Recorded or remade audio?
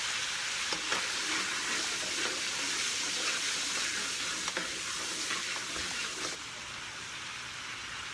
recorded